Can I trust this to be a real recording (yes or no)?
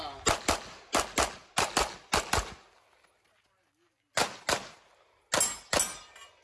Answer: yes